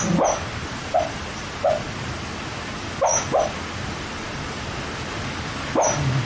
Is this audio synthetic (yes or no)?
no